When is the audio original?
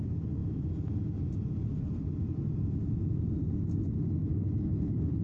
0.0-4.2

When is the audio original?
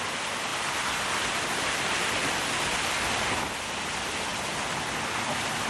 0.0-5.7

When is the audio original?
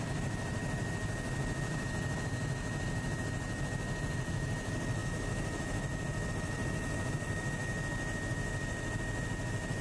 7.6-8.2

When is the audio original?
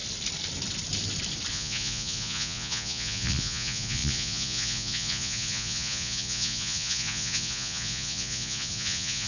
0.0-1.5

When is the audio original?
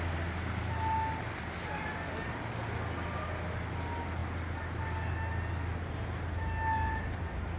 0.0-7.6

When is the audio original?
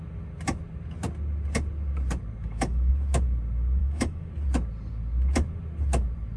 0.0-2.4; 2.9-3.8; 4.3-6.4